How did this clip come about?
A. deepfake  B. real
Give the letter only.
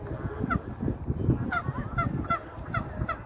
B